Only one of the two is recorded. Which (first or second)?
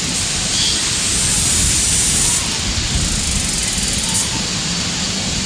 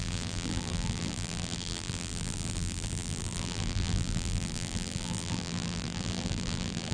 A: first